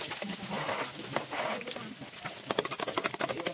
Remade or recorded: recorded